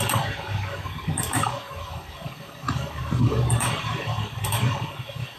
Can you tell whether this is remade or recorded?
remade